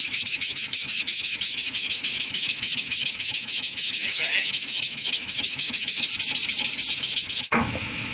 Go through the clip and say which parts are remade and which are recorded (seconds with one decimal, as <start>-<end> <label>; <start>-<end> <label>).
0.0-6.1 remade; 6.1-6.9 recorded; 6.9-8.1 remade